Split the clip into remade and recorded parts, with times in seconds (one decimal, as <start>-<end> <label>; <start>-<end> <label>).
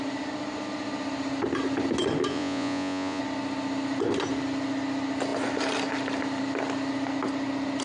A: 0.0-2.3 recorded; 2.3-3.2 remade; 3.2-7.8 recorded